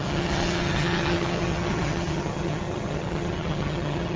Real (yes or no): no